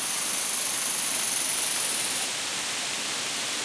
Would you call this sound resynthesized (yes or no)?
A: no